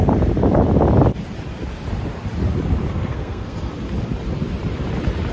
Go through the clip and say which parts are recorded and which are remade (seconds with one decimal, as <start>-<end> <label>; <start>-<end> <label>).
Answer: 0.0-2.9 recorded; 2.9-3.7 remade; 3.7-5.3 recorded